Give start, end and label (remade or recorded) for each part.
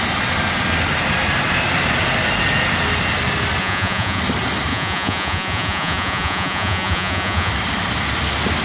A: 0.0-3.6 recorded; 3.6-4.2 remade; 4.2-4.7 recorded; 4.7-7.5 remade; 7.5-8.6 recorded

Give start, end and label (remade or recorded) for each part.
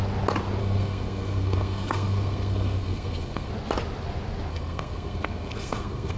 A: 0.0-0.6 recorded; 0.6-3.5 remade; 3.5-4.5 recorded; 4.5-6.2 remade